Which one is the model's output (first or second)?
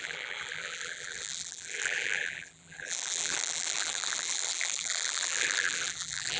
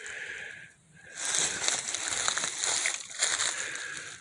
first